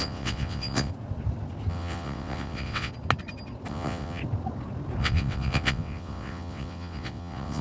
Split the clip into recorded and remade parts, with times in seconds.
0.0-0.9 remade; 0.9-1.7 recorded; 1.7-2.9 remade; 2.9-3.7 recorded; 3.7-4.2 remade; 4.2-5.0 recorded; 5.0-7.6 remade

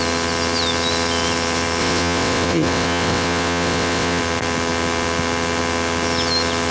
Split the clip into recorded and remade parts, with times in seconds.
0.0-1.8 recorded; 1.8-4.2 remade; 4.2-6.7 recorded

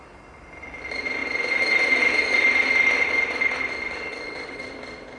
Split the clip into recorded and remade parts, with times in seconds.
0.0-4.1 recorded; 4.1-4.7 remade; 4.7-5.2 recorded